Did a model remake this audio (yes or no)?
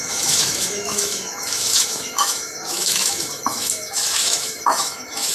yes